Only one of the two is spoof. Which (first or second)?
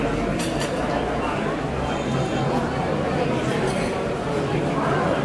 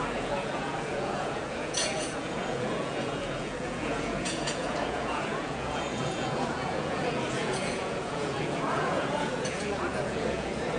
second